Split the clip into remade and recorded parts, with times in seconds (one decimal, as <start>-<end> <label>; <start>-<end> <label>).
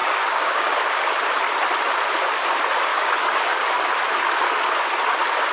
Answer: 0.0-1.0 remade; 1.0-2.9 recorded; 2.9-3.9 remade; 3.9-5.5 recorded